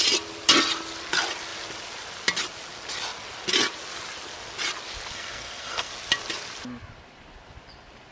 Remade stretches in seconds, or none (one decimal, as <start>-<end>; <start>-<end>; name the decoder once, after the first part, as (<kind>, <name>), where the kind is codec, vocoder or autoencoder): 5.1-5.9 (codec, SNAC)